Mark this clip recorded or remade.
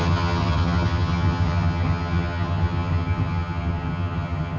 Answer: remade